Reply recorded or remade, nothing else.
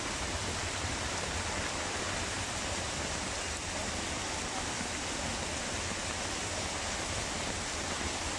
remade